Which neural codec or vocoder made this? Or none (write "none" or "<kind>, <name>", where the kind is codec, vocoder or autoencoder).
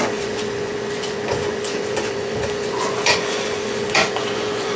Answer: vocoder, Vocos